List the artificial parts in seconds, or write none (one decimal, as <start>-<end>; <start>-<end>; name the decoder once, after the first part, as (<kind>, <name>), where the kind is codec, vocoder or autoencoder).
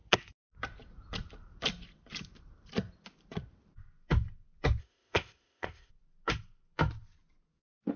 4.8-5.9 (codec, ZipCodec)